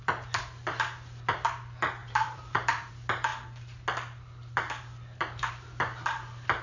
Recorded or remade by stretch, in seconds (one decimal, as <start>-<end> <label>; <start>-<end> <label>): 0.0-2.0 recorded; 2.0-2.9 remade; 2.9-6.6 recorded